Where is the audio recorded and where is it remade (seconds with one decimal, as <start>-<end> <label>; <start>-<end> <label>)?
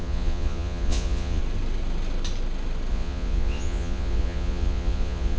0.0-1.4 remade; 1.4-2.9 recorded; 2.9-5.4 remade